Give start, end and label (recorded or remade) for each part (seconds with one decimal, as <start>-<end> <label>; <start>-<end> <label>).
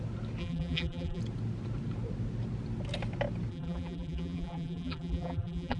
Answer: 0.0-0.4 recorded; 0.4-1.2 remade; 1.2-3.5 recorded; 3.5-5.8 remade